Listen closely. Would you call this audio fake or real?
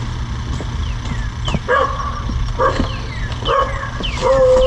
real